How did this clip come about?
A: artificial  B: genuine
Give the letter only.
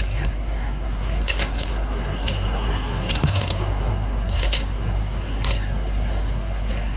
A